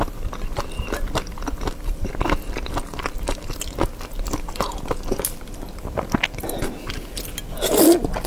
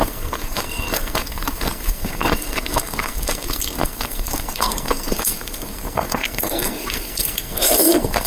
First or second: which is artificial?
second